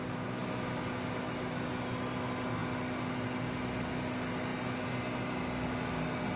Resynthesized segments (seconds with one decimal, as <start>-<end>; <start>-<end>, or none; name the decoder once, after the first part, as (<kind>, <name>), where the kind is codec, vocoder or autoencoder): none